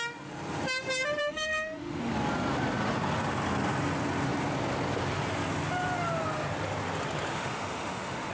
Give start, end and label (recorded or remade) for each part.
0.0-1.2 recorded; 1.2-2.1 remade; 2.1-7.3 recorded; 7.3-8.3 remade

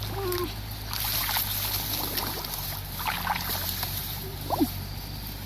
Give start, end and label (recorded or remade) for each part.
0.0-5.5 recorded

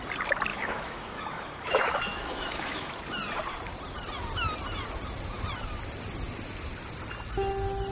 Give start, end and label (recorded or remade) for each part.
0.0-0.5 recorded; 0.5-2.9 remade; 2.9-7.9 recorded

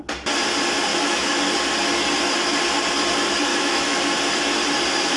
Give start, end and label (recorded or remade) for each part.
0.0-0.9 recorded; 0.9-1.4 remade; 1.4-3.5 recorded; 3.5-4.0 remade; 4.0-5.2 recorded

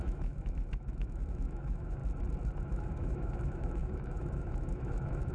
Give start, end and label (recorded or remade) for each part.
0.0-2.0 remade; 2.0-2.7 recorded; 2.7-5.3 remade

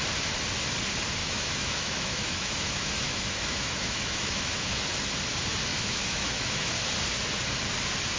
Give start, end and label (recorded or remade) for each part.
0.0-1.2 recorded; 1.2-4.8 remade; 4.8-5.7 recorded; 5.7-6.7 remade; 6.7-8.2 recorded

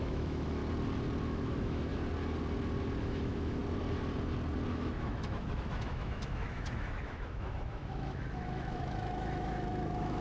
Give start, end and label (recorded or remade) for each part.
0.0-0.6 remade; 0.6-1.2 recorded; 1.2-1.9 remade; 1.9-3.0 recorded; 3.0-3.6 remade; 3.6-4.7 recorded; 4.7-10.2 remade